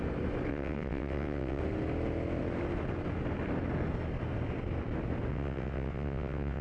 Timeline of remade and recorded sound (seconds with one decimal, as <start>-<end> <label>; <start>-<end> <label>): 0.0-0.5 recorded; 0.5-1.6 remade; 1.6-5.3 recorded; 5.3-6.6 remade